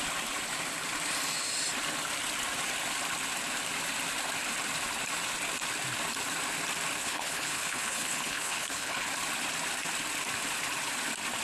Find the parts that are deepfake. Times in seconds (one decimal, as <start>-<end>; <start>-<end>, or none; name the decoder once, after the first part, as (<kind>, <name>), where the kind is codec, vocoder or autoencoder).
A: 7.0-9.1 (codec, HILCodec)